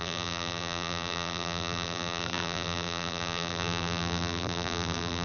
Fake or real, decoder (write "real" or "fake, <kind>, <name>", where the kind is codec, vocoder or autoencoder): fake, vocoder, BigVGAN v2